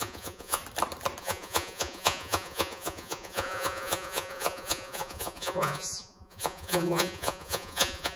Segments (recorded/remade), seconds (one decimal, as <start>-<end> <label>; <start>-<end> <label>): 0.0-0.6 remade; 0.6-1.2 recorded; 1.2-8.2 remade